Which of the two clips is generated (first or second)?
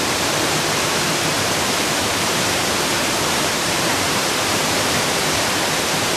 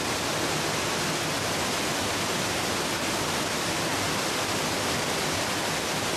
first